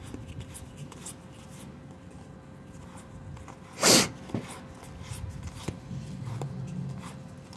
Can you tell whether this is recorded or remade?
recorded